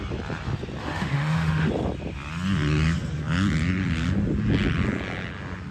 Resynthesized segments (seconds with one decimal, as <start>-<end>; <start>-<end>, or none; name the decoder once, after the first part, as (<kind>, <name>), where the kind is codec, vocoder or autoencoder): 0.8-1.7 (autoencoder, DAC-VAE)